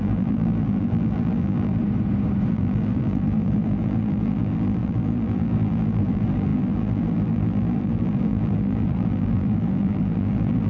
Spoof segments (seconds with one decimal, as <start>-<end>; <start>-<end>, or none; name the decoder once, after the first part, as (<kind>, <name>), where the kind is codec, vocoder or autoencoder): 0.0-1.8 (vocoder, BigVGAN v2); 2.5-10.7